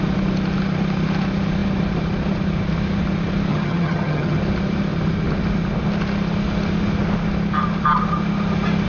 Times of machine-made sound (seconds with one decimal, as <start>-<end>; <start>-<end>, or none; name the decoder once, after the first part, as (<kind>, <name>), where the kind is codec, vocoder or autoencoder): 3.5-4.4 (vocoder, HiFi-GAN)